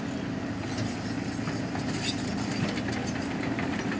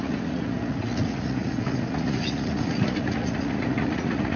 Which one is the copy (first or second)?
second